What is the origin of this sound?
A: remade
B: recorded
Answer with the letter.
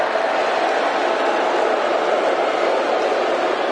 B